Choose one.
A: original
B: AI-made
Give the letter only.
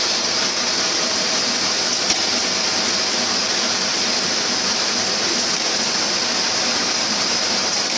A